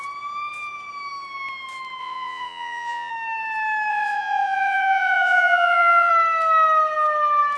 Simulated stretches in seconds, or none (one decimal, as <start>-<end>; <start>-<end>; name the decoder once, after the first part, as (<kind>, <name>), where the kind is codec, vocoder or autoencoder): 2.0-3.1 (vocoder, Vocos); 3.9-6.1